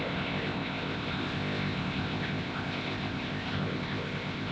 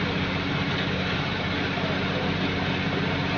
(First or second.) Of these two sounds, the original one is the second